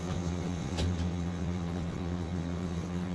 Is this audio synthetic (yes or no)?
yes